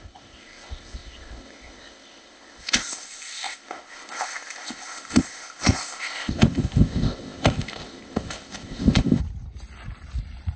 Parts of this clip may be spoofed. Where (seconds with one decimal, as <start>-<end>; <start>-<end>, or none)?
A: 0.0-9.2